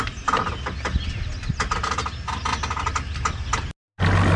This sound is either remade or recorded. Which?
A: recorded